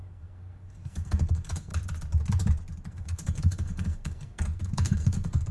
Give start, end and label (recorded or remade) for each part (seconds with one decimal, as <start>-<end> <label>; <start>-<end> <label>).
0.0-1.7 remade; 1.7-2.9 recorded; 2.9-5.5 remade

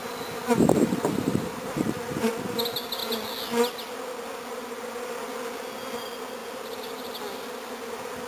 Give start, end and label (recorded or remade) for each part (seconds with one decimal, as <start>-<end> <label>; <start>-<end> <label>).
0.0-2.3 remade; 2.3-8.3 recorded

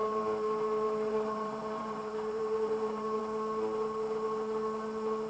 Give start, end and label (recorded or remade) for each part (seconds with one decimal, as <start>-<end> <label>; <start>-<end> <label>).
0.0-3.2 remade; 3.2-5.3 recorded

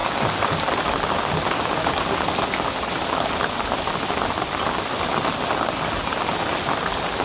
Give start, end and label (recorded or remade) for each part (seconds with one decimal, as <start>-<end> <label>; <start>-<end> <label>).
0.0-7.2 recorded

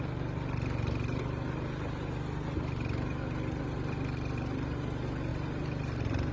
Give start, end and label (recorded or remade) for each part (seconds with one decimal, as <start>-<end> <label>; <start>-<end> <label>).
0.0-6.3 recorded

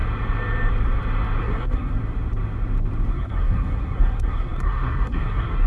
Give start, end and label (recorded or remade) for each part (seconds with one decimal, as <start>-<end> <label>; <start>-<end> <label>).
0.0-1.4 recorded; 1.4-2.0 remade; 2.0-3.1 recorded; 3.1-5.7 remade

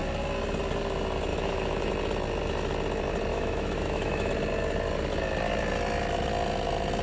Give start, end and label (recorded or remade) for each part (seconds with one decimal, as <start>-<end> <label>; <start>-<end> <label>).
0.0-1.3 recorded; 1.3-1.9 remade; 1.9-3.3 recorded; 3.3-4.3 remade; 4.3-7.0 recorded

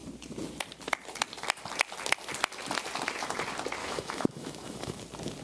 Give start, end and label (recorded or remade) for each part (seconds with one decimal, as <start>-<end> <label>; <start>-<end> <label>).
0.0-3.8 recorded; 3.8-5.0 remade; 5.0-5.4 recorded